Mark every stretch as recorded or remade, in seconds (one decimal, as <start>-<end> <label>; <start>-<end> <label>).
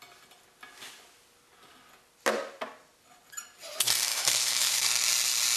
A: 0.0-4.1 recorded; 4.1-4.8 remade; 4.8-5.6 recorded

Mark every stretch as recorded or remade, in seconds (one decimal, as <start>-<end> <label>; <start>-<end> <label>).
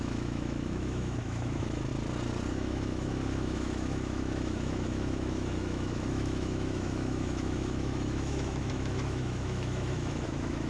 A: 0.0-1.9 remade; 1.9-2.5 recorded; 2.5-10.7 remade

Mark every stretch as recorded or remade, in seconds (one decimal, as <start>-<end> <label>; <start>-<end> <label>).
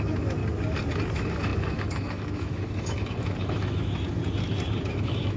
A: 0.0-0.4 remade; 0.4-1.1 recorded; 1.1-4.2 remade; 4.2-4.8 recorded; 4.8-5.4 remade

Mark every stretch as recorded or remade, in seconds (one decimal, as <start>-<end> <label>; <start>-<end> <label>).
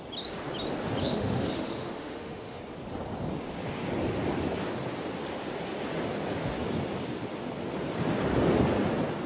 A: 0.0-1.0 recorded; 1.0-2.6 remade; 2.6-9.3 recorded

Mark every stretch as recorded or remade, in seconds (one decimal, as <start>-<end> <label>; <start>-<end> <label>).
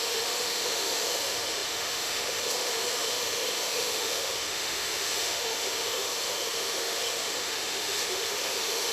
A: 0.0-8.9 remade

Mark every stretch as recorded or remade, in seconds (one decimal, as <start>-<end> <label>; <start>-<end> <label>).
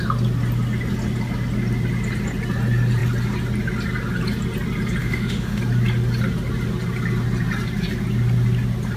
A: 0.0-5.0 recorded; 5.0-5.6 remade; 5.6-9.0 recorded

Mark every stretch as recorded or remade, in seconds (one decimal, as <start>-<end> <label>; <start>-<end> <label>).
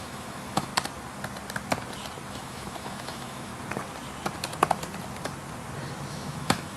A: 0.0-0.7 remade; 0.7-2.3 recorded; 2.3-3.5 remade; 3.5-6.1 recorded; 6.1-6.8 remade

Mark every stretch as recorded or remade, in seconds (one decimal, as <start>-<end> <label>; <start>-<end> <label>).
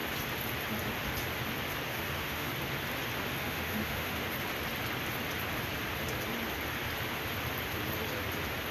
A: 0.0-1.9 recorded; 1.9-2.5 remade; 2.5-3.4 recorded; 3.4-4.2 remade; 4.2-8.7 recorded